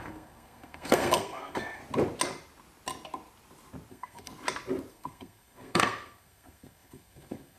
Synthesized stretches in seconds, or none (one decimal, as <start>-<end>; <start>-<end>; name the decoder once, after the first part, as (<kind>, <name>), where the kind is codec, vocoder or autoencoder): 0.0-1.8 (codec, SNAC); 3.9-4.3; 4.9-7.6